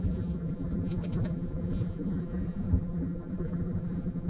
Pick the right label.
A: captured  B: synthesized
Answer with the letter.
B